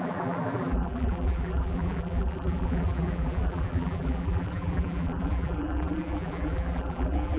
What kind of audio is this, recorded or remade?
remade